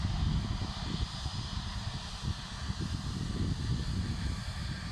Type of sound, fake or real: real